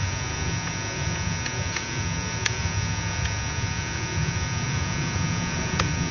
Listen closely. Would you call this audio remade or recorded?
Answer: remade